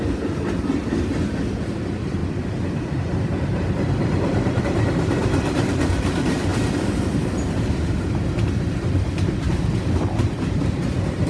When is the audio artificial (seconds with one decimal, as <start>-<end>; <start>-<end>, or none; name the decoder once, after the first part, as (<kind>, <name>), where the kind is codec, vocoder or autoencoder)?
0.0-11.3 (vocoder, BigVGAN v2)